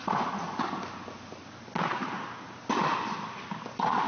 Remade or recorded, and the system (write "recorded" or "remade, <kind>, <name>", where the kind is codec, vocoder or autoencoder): recorded